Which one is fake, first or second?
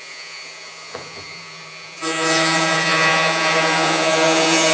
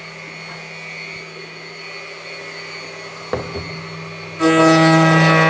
first